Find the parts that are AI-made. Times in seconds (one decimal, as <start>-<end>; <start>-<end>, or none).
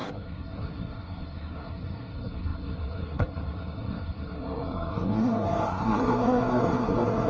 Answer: 0.0-7.3